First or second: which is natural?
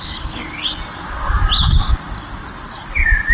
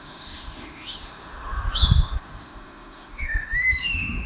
first